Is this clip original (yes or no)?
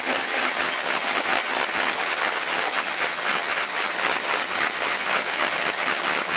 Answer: no